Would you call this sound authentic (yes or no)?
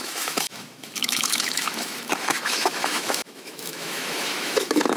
no